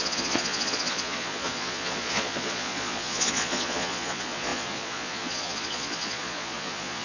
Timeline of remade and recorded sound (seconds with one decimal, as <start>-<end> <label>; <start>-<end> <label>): 0.0-7.0 remade